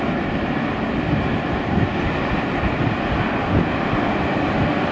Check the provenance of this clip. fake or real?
real